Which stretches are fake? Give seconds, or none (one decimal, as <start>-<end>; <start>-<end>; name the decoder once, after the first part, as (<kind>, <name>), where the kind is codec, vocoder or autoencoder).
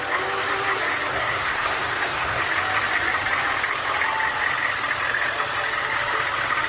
1.1-2.4 (codec, SNAC)